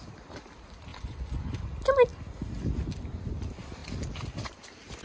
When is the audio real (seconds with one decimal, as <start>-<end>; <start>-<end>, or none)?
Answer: 0.0-0.9; 1.6-5.0